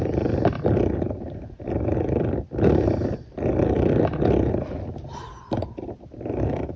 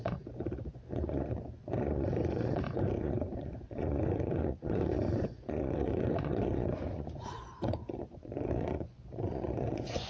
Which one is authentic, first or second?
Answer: first